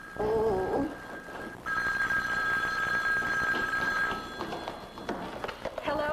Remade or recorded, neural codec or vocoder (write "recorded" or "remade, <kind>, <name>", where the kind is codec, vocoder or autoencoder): recorded